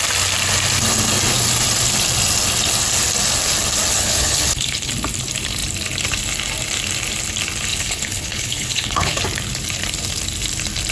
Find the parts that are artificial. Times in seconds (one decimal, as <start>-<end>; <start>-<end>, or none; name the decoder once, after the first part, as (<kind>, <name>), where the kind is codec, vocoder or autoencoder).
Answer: 3.9-4.9 (codec, HILCodec); 7.7-9.2